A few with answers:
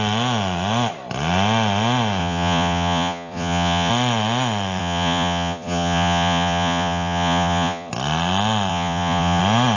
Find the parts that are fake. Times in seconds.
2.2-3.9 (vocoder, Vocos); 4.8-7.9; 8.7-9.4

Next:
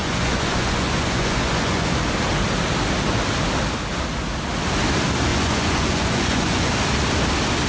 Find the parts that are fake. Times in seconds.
0.0-2.0 (vocoder, Vocos); 5.3-6.7

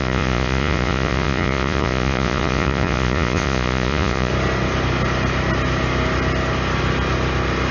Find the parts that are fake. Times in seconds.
0.0-4.3 (vocoder, Vocos)